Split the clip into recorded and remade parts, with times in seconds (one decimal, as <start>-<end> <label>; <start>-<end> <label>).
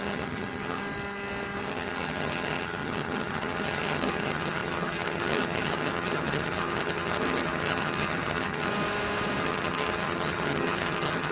0.0-0.8 remade; 0.8-1.6 recorded; 1.6-8.7 remade; 8.7-9.4 recorded; 9.4-11.3 remade